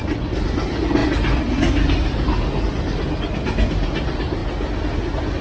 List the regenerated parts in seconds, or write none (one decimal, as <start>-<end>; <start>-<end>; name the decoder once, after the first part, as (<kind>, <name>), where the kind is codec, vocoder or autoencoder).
none